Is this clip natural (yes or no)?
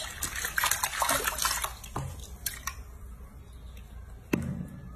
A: yes